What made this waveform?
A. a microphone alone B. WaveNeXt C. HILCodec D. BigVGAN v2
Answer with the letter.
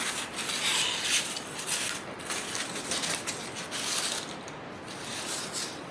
A